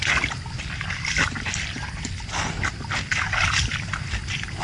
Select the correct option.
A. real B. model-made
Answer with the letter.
A